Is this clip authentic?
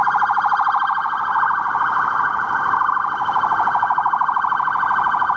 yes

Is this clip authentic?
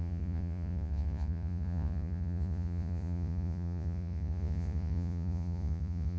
no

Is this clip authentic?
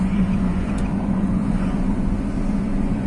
no